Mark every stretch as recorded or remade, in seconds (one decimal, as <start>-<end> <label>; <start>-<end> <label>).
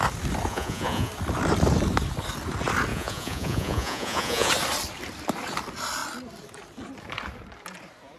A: 0.0-0.5 recorded; 0.5-1.1 remade; 1.1-2.9 recorded; 2.9-4.5 remade; 4.5-8.2 recorded